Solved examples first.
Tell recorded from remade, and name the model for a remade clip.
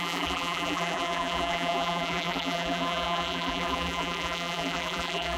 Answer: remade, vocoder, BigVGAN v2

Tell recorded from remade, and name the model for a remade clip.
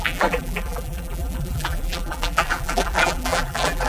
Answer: remade, vocoder, BigVGAN v2